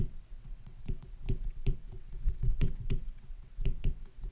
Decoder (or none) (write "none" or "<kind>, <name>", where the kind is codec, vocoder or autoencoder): vocoder, WaveNeXt